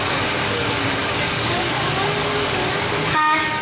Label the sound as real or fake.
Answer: fake